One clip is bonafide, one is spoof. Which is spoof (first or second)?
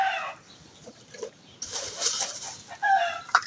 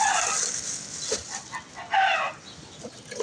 first